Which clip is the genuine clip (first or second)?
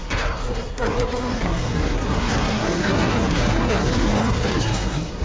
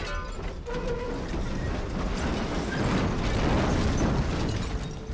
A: second